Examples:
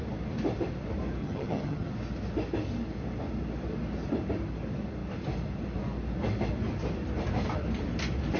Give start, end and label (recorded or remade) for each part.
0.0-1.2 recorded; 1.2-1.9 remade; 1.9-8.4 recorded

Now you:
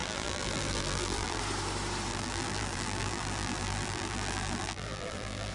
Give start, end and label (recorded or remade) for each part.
0.0-1.4 remade; 1.4-2.1 recorded; 2.1-5.5 remade

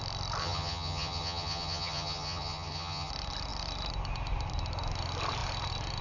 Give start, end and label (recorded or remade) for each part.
0.0-0.4 recorded; 0.4-3.1 remade; 3.1-6.0 recorded

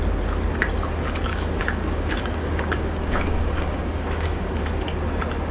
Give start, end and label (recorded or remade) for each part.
0.0-1.3 recorded; 1.3-4.6 remade; 4.6-5.5 recorded

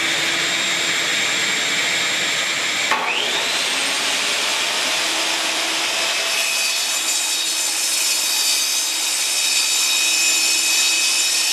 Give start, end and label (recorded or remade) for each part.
0.0-11.5 recorded